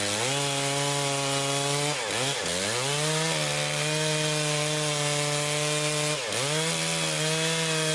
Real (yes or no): yes